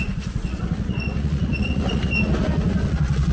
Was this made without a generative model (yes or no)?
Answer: no